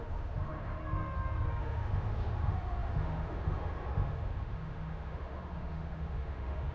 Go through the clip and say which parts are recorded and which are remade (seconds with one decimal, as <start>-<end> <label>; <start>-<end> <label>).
0.0-0.8 remade; 0.8-1.6 recorded; 1.6-6.7 remade